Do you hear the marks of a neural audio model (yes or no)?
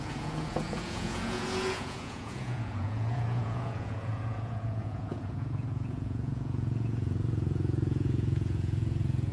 yes